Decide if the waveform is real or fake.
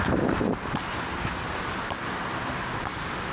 real